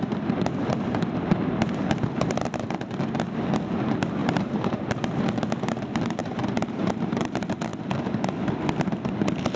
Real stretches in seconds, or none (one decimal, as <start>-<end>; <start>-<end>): 0.0-4.2; 4.9-6.2; 7.3-9.6